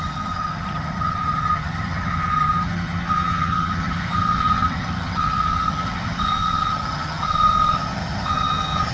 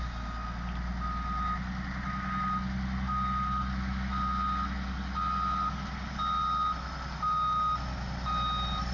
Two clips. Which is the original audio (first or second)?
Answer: second